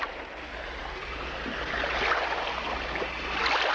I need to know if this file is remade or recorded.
recorded